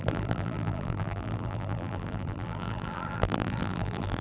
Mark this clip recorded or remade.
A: remade